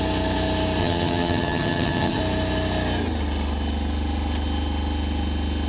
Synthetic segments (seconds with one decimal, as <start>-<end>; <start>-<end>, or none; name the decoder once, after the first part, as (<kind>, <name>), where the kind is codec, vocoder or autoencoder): 0.8-2.2 (vocoder, HiFi-GAN)